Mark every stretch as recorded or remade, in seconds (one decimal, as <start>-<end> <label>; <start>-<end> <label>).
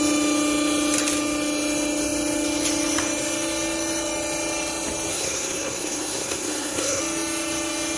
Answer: 0.0-5.1 recorded; 5.1-7.0 remade; 7.0-8.0 recorded